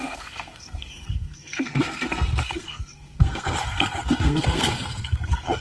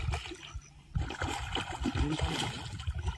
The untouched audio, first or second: second